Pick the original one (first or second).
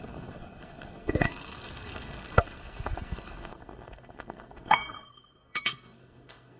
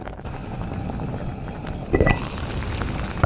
second